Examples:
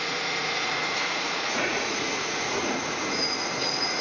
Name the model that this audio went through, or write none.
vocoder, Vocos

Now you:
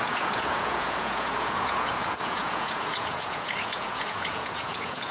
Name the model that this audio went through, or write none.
vocoder, Vocos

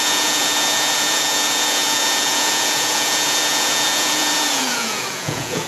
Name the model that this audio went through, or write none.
vocoder, Vocos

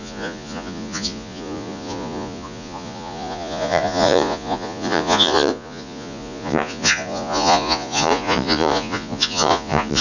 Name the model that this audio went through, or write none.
vocoder, Vocos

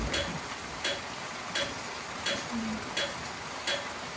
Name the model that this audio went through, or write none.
none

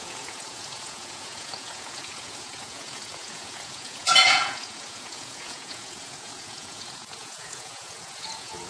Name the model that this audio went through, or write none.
vocoder, Vocos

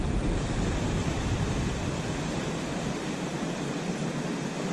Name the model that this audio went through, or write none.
none